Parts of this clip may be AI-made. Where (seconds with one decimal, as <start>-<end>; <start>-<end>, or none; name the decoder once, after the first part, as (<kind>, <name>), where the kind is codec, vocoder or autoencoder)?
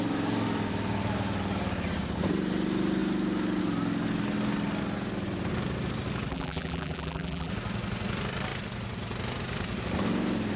6.3-7.5 (vocoder, BigVGAN v2)